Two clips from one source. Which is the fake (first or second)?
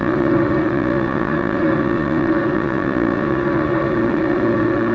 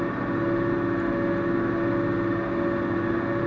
first